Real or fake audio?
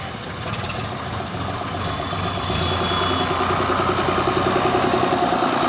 real